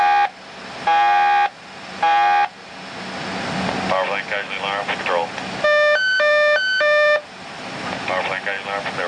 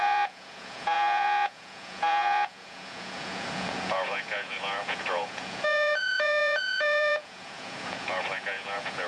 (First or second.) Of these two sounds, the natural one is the first